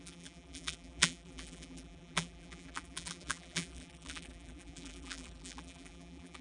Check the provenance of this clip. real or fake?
fake